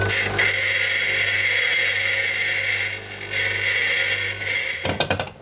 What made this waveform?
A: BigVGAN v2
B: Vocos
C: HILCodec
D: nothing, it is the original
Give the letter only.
D